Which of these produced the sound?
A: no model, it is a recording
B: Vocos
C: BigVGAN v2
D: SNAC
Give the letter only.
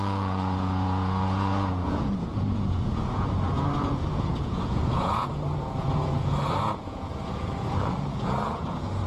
B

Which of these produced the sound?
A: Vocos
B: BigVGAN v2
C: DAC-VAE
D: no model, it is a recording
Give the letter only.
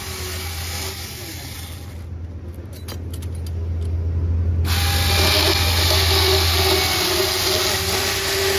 D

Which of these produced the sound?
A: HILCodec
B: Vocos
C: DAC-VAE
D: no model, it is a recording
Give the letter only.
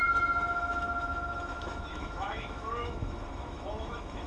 C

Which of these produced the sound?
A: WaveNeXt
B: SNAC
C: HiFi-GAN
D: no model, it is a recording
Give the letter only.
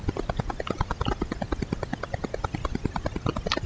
D